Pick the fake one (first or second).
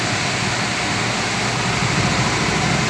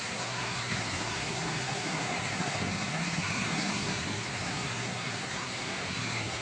second